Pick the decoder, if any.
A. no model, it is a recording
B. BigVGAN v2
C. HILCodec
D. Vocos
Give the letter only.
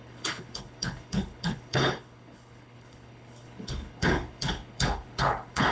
C